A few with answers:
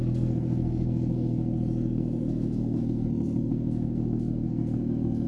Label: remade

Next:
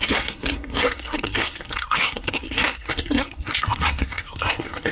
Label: remade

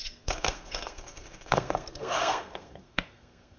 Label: remade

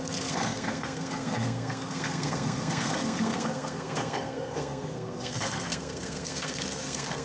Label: remade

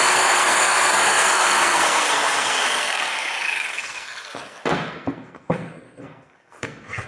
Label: remade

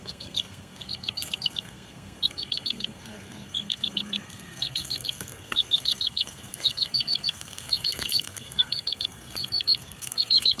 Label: remade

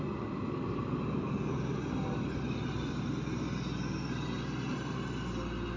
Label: recorded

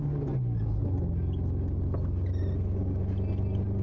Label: recorded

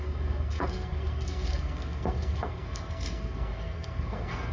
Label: remade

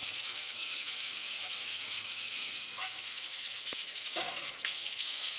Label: remade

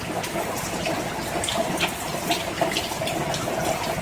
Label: recorded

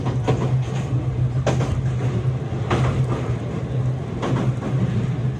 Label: recorded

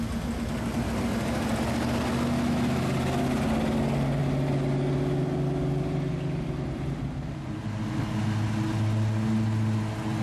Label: recorded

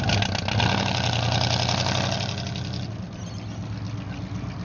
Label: recorded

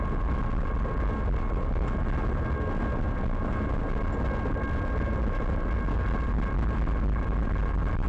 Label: recorded